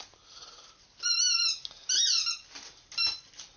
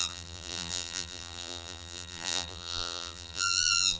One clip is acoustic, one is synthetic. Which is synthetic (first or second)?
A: second